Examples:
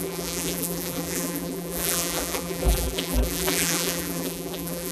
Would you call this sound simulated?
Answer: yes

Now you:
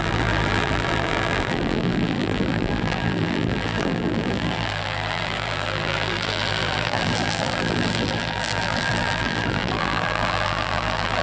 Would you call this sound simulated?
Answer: yes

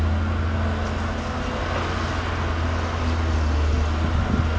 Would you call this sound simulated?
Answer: no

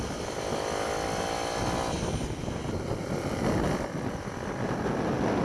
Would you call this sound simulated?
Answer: no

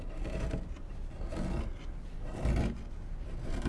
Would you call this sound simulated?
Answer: no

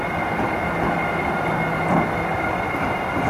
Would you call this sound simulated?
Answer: no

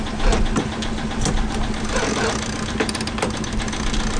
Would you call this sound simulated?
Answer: no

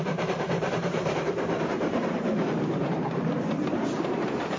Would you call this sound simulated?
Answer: yes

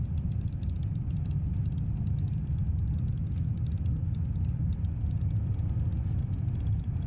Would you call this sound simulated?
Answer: no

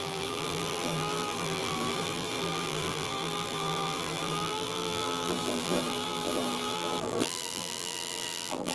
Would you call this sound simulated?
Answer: yes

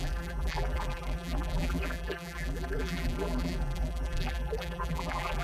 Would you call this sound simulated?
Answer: yes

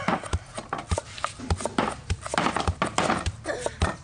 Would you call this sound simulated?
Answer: no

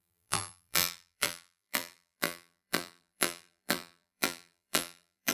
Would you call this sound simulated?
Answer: yes